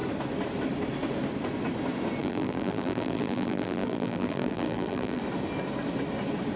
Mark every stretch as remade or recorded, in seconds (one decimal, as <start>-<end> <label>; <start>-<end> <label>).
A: 0.0-2.2 recorded; 2.2-5.2 remade; 5.2-6.6 recorded